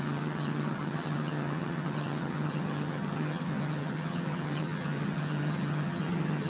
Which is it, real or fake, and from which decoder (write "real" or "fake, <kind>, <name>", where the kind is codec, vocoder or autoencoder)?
fake, vocoder, HiFi-GAN